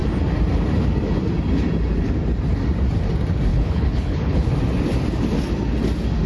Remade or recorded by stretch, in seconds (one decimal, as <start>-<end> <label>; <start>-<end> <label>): 0.0-3.5 recorded; 3.5-4.5 remade; 4.5-6.3 recorded